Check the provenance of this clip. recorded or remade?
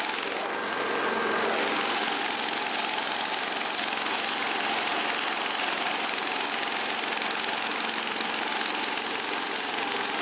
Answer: recorded